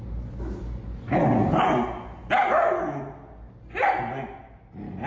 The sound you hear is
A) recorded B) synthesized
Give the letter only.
A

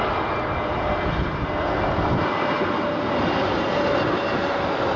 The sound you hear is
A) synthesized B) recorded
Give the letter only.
B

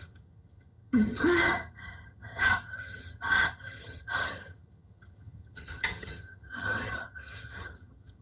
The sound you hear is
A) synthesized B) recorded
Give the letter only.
A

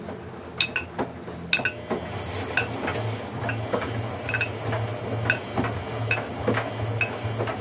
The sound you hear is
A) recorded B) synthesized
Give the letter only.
A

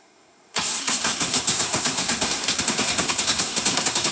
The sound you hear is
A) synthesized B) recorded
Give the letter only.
A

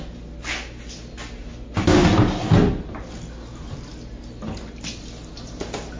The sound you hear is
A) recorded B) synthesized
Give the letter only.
A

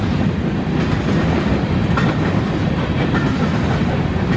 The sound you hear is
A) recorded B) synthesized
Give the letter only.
A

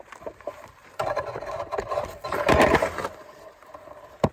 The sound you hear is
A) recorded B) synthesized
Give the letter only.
B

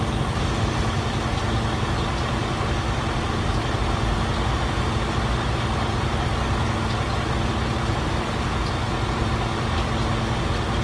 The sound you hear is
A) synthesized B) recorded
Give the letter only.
B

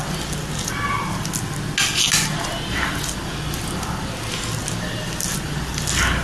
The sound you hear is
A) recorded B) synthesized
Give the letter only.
A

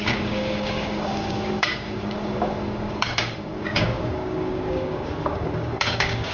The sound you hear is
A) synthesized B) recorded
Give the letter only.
A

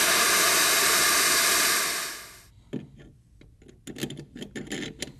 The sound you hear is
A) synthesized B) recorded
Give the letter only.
B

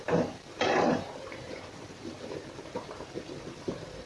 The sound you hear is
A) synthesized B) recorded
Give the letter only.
A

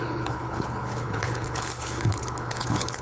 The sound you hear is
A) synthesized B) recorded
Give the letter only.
A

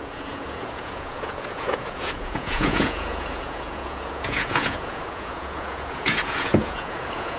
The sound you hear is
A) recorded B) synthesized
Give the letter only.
B